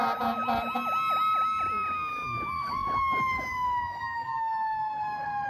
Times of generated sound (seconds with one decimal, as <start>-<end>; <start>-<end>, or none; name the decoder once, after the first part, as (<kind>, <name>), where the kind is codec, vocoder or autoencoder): 2.1-5.5 (codec, DAC)